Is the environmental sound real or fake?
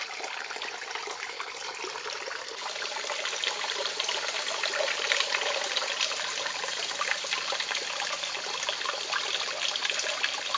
real